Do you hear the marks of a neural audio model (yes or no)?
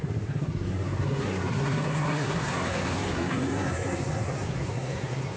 yes